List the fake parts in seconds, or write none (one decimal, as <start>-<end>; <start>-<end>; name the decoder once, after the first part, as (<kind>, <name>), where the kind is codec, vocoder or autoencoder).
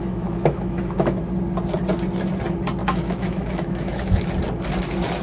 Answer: 0.0-1.2 (autoencoder, DAC-VAE); 2.8-4.2